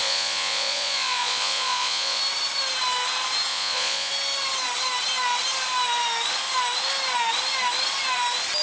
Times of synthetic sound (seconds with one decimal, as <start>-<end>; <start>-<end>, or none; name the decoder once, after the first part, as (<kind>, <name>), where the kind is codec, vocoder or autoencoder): 0.0-2.2 (vocoder, Vocos); 3.5-4.1